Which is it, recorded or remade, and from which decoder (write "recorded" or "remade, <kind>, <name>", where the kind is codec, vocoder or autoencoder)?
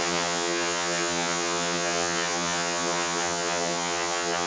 remade, vocoder, HiFi-GAN